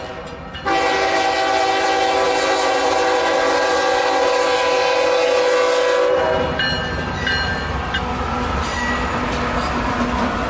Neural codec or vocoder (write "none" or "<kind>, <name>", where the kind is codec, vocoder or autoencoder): none